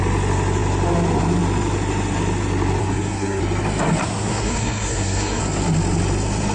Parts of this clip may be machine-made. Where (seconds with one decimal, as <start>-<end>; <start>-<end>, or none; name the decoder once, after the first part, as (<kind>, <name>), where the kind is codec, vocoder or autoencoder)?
2.8-3.4 (codec, SNAC); 4.0-5.4